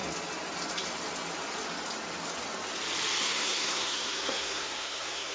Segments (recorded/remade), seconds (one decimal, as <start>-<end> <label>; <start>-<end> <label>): 0.0-3.2 recorded; 3.2-5.3 remade